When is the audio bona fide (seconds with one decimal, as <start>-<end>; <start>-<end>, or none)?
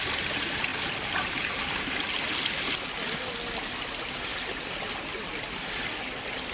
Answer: 0.0-6.5